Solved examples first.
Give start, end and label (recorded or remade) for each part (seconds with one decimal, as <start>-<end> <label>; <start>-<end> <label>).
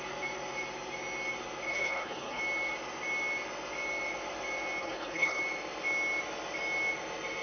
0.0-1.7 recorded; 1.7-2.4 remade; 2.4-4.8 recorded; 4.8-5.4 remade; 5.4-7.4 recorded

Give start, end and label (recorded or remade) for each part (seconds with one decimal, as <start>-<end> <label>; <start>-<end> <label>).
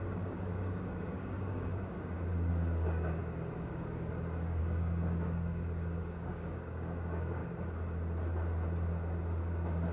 0.0-7.4 remade; 7.4-9.4 recorded; 9.4-9.9 remade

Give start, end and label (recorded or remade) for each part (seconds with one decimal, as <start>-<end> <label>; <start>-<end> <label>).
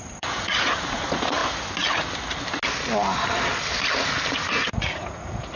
0.0-1.4 remade; 1.4-4.3 recorded; 4.3-5.6 remade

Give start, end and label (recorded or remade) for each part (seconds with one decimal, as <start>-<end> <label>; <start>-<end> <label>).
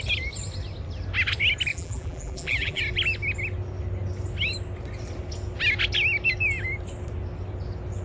0.0-1.7 recorded; 1.7-2.8 remade; 2.8-8.0 recorded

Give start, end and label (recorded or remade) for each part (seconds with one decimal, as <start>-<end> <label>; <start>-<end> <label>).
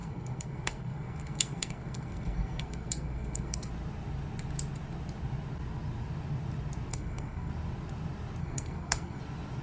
0.0-3.7 remade; 3.7-6.9 recorded; 6.9-7.5 remade; 7.5-8.4 recorded; 8.4-9.2 remade; 9.2-9.6 recorded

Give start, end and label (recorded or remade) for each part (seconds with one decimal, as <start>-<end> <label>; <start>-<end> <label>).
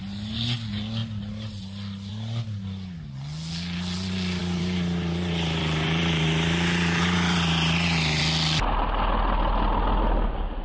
0.0-4.4 recorded; 4.4-8.2 remade; 8.2-10.6 recorded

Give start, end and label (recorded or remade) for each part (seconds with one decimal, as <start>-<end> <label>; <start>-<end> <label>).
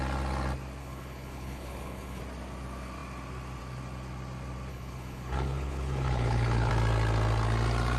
0.0-0.8 recorded; 0.8-2.2 remade; 2.2-4.7 recorded; 4.7-6.7 remade; 6.7-8.0 recorded